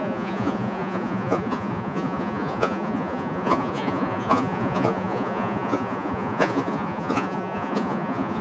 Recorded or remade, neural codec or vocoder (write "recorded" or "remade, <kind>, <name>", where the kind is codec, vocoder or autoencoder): remade, vocoder, Vocos